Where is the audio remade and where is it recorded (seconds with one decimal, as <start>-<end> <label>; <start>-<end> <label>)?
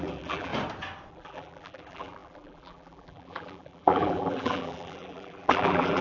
0.0-0.5 remade; 0.5-1.1 recorded; 1.1-6.0 remade